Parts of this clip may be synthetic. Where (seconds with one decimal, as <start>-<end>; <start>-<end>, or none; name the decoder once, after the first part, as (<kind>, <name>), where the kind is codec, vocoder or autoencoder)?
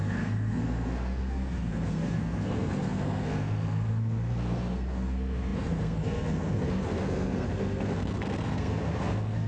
0.0-9.5 (codec, SNAC)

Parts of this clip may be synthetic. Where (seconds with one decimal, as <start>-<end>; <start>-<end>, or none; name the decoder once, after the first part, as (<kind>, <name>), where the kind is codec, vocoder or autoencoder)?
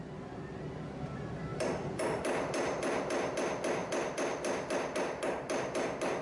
1.5-2.2 (vocoder, BigVGAN v2); 3.8-5.7